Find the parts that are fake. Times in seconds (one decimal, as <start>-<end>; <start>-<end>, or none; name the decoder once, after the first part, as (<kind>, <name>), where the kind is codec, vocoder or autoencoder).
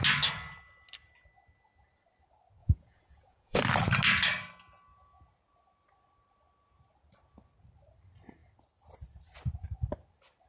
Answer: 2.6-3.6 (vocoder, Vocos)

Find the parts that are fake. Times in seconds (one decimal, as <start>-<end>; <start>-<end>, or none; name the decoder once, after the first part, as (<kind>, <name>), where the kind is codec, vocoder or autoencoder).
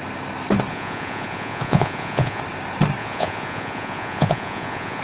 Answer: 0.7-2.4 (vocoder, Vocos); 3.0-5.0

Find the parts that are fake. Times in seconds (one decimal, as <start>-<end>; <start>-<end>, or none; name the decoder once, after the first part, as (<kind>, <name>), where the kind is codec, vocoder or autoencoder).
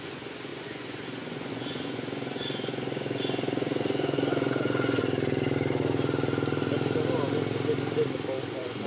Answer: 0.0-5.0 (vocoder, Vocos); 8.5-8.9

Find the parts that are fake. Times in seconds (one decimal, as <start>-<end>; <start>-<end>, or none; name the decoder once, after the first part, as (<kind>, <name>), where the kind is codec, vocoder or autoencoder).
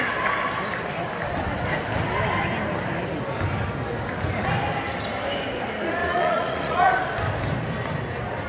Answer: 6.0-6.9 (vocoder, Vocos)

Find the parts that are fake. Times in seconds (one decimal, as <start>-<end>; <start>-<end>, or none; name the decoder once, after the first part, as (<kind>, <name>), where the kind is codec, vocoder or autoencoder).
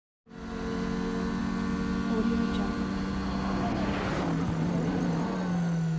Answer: none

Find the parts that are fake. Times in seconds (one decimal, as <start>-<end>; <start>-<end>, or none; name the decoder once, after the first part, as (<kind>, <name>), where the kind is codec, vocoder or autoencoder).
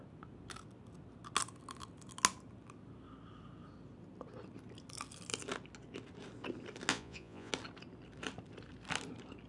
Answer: 6.9-7.5 (vocoder, Vocos)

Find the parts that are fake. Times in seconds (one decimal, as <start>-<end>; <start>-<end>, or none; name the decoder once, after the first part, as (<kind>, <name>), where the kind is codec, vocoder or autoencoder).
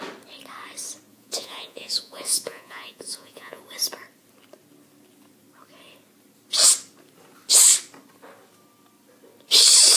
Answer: 1.1-3.6 (vocoder, Vocos)